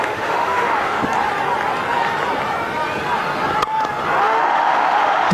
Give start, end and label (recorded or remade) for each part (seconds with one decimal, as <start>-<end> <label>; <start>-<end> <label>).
0.0-1.0 remade; 1.0-4.2 recorded; 4.2-5.3 remade